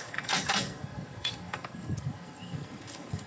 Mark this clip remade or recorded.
remade